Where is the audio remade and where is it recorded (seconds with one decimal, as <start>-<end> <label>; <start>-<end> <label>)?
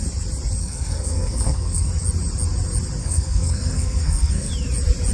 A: 0.0-0.6 recorded; 0.6-1.9 remade; 1.9-3.0 recorded; 3.0-4.5 remade; 4.5-5.1 recorded